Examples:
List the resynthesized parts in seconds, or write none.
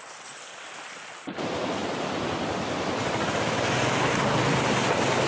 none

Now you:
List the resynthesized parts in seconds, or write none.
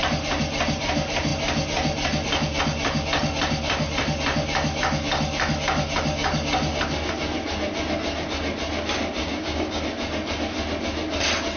9.2-9.8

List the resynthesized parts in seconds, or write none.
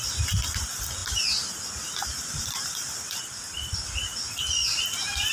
none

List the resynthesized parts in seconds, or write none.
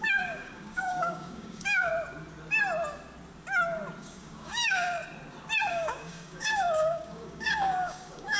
0.0-1.9; 4.0-5.0; 5.7-8.4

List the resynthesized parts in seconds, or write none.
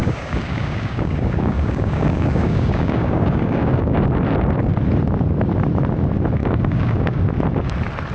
0.0-4.0; 6.4-7.2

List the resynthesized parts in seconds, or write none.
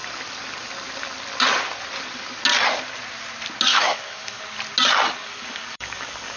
3.7-4.4; 5.2-6.4